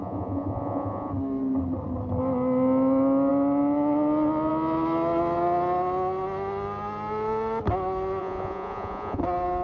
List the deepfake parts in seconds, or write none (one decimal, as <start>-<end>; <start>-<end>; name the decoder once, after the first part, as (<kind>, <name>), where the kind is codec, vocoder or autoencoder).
0.0-1.1 (vocoder, Vocos); 8.2-9.2